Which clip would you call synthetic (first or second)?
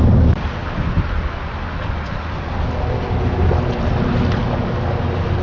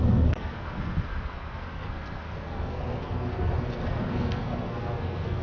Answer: second